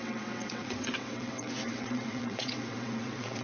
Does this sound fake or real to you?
fake